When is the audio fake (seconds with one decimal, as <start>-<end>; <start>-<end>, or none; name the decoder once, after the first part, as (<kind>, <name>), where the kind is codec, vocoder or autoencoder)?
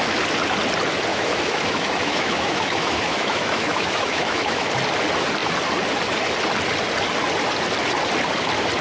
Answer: 1.1-4.7 (autoencoder, DAC-VAE)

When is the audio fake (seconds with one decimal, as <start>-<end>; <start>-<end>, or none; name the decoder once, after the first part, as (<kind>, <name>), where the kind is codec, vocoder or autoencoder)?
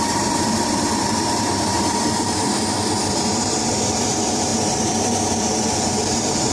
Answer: 0.0-6.5 (vocoder, BigVGAN v2)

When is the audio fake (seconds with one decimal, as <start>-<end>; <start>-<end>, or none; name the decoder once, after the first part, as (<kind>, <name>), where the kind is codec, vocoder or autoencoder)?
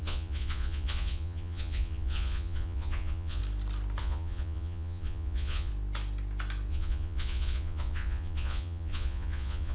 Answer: 0.0-3.4 (vocoder, Vocos); 4.0-5.7; 6.7-9.7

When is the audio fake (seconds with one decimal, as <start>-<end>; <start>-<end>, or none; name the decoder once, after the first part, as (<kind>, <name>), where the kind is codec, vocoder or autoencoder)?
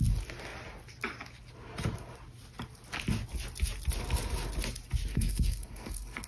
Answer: 5.1-6.3 (codec, SNAC)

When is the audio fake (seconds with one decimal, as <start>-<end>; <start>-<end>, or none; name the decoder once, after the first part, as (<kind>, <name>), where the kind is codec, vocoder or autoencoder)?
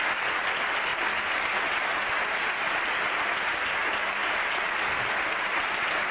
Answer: none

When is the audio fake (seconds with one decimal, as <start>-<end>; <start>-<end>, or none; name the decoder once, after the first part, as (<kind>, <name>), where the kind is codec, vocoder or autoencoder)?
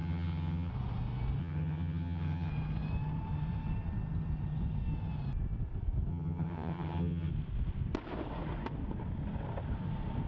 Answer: 0.0-0.7 (vocoder, HiFi-GAN); 1.4-2.5; 6.1-7.3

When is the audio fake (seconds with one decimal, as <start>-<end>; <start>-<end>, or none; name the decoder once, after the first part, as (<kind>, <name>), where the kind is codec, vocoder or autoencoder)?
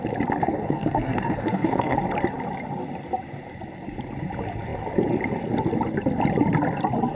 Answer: 0.4-2.0 (codec, SNAC)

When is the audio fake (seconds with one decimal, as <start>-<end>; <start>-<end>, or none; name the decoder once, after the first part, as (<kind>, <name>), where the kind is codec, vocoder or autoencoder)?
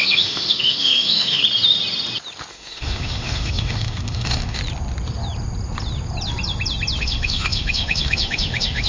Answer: 0.0-1.4 (autoencoder, DAC-VAE); 2.5-4.6; 7.0-8.9